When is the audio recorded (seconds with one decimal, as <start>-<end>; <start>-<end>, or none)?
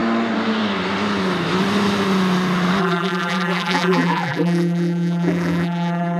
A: 0.0-2.8